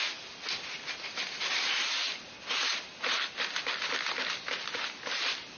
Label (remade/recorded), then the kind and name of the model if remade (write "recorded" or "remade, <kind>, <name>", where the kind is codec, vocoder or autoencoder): recorded